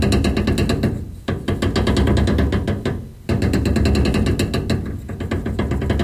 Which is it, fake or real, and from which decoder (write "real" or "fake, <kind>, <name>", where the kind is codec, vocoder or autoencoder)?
real